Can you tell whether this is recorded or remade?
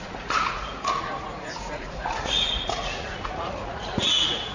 remade